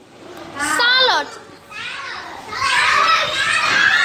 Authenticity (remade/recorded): recorded